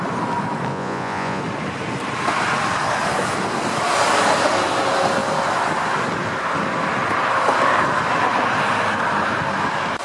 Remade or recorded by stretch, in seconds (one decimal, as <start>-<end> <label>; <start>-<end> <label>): 0.0-0.7 recorded; 0.7-1.4 remade; 1.4-10.0 recorded